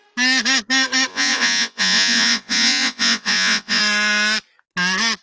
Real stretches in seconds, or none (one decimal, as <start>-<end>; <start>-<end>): 0.0-1.1; 3.8-5.2